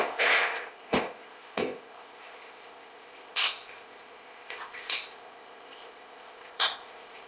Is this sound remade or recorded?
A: remade